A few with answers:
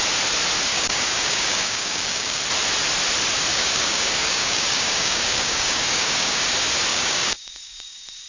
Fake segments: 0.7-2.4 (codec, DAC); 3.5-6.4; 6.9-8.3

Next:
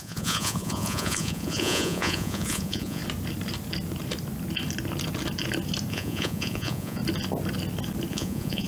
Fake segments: 0.0-3.0 (vocoder, Vocos); 5.9-7.0; 8.1-8.7